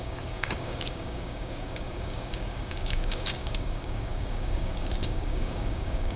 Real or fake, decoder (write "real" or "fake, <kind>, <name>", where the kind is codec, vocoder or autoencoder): fake, codec, DAC